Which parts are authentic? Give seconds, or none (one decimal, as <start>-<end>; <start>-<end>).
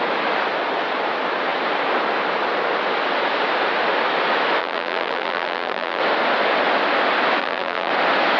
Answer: 0.0-4.6; 6.0-7.4; 7.9-8.4